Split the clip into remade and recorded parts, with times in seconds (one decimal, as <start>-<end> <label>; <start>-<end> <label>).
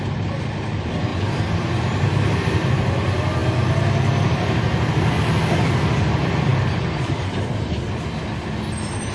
0.0-9.1 recorded